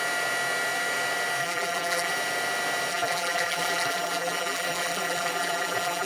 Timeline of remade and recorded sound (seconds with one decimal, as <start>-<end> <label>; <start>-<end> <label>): 0.0-1.4 recorded; 1.4-2.1 remade; 2.1-2.9 recorded; 2.9-6.1 remade